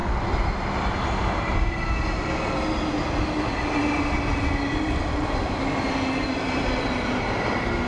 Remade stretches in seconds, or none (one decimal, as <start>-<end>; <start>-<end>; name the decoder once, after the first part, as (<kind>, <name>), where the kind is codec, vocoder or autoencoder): none